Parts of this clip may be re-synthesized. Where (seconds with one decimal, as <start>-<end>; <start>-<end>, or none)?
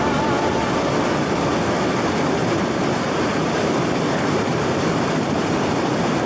2.4-5.6